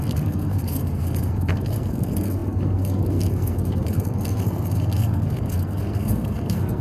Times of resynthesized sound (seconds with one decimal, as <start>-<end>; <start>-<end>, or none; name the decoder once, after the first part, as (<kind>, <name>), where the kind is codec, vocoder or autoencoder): 0.0-6.8 (codec, SNAC)